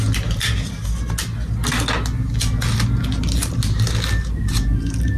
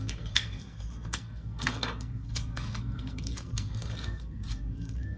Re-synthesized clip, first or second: second